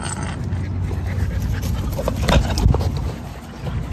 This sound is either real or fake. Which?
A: real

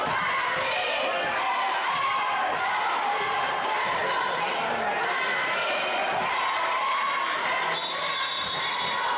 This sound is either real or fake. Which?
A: real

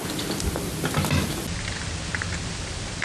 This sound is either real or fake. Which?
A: real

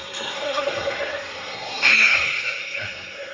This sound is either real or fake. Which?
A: fake